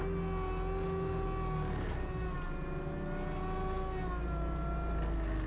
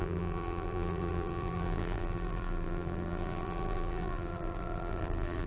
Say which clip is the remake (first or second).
second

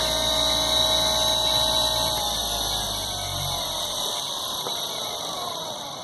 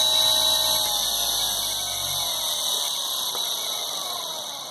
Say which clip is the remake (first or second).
first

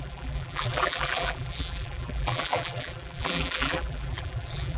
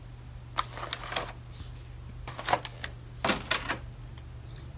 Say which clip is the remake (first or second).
first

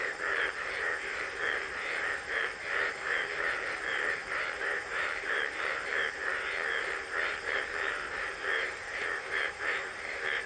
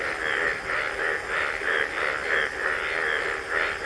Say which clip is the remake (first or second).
first